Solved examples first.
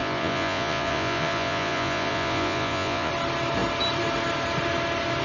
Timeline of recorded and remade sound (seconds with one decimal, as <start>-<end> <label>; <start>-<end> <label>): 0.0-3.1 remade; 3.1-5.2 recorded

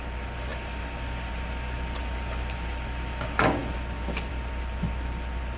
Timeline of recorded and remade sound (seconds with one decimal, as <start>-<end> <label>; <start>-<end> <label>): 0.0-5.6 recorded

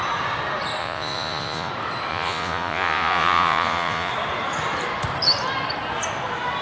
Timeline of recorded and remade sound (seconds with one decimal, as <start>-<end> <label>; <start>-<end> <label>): 0.0-0.8 recorded; 0.8-1.7 remade; 1.7-2.1 recorded; 2.1-4.1 remade; 4.1-6.6 recorded

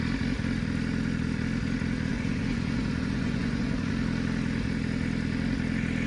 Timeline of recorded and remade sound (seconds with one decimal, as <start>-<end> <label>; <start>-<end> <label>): 0.0-2.1 recorded; 2.1-3.9 remade; 3.9-6.1 recorded

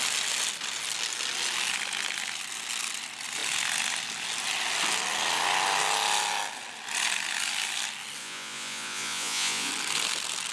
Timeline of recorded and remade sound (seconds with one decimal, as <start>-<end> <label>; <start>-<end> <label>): 0.0-8.2 recorded; 8.2-9.7 remade; 9.7-10.5 recorded